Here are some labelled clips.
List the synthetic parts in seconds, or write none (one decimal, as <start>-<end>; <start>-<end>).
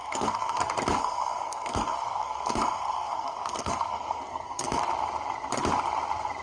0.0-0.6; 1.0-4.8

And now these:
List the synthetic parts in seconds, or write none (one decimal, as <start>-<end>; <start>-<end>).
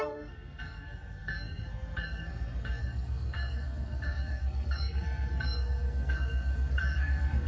0.0-7.5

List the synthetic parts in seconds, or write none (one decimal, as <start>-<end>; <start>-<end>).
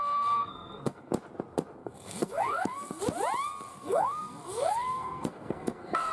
0.0-1.1; 1.8-3.0; 3.7-6.1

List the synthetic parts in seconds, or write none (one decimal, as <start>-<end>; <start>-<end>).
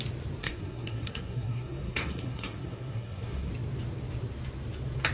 0.4-3.5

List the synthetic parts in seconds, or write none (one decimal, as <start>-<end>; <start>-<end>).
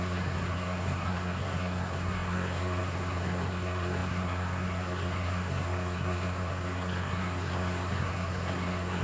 0.0-9.0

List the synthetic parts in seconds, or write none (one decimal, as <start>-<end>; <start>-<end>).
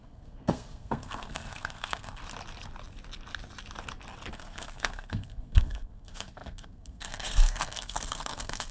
0.0-2.2; 4.3-8.7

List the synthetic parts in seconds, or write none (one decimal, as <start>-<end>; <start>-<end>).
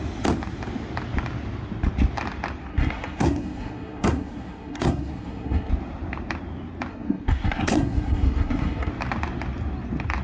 2.7-5.7; 6.9-8.9